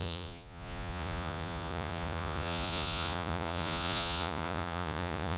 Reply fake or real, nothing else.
fake